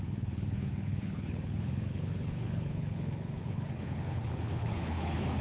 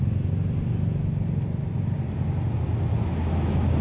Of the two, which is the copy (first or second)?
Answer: first